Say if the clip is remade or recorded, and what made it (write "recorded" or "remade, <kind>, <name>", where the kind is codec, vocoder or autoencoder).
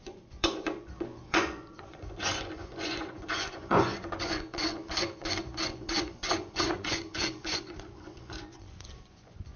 remade, vocoder, Vocos